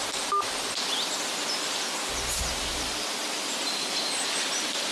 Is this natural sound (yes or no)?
yes